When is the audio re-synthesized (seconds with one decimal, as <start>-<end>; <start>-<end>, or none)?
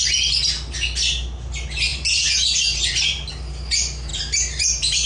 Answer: 1.9-3.3; 4.1-5.1